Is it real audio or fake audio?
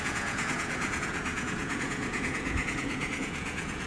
fake